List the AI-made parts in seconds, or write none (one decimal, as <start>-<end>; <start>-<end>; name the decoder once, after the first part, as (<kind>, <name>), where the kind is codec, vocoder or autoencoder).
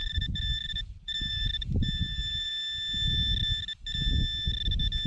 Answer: 0.0-2.5 (vocoder, BigVGAN v2)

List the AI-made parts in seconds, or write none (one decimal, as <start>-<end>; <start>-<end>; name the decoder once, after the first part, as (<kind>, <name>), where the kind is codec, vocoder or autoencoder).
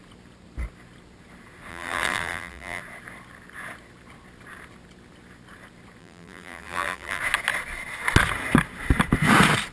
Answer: 1.7-2.8 (vocoder, BigVGAN v2); 6.0-7.2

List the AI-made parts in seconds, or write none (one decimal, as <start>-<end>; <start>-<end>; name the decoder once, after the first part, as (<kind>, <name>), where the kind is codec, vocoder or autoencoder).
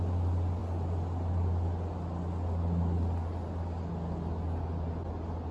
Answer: none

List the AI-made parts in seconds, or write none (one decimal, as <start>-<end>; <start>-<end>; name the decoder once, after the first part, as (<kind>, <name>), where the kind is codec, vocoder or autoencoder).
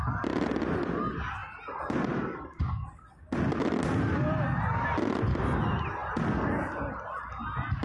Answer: none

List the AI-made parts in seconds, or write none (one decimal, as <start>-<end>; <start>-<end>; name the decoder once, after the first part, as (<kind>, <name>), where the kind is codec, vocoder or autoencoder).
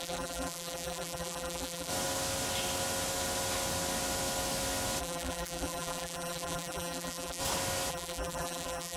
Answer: 0.0-1.9 (vocoder, BigVGAN v2); 5.0-7.4; 7.9-9.0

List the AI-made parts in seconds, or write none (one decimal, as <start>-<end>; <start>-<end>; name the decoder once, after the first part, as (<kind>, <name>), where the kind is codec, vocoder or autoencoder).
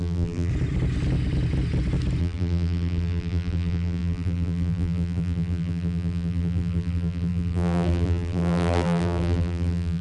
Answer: 0.0-0.5 (vocoder, BigVGAN v2); 2.2-10.0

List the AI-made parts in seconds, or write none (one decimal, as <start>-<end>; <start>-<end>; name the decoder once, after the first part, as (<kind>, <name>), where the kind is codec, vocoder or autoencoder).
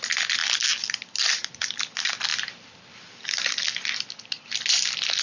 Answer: none